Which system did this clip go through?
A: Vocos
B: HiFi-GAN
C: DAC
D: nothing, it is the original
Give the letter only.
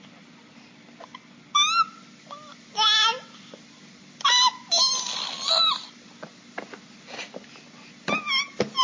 D